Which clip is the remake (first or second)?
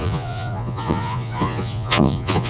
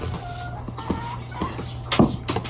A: first